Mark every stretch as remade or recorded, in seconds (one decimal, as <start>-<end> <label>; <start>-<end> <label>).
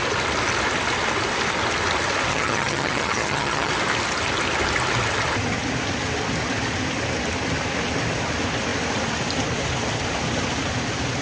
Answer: 0.0-2.3 recorded; 2.3-3.7 remade; 3.7-11.2 recorded